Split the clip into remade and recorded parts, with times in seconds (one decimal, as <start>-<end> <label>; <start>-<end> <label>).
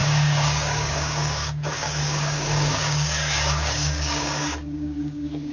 0.0-5.5 remade